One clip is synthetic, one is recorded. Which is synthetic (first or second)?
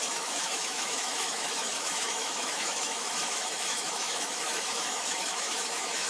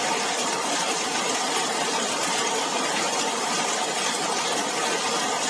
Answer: first